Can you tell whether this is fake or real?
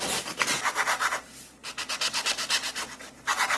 real